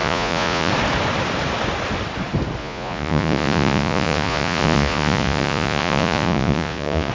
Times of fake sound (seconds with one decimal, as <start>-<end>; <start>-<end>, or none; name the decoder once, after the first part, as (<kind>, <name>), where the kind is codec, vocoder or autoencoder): 0.0-0.7 (vocoder, Vocos); 2.6-7.1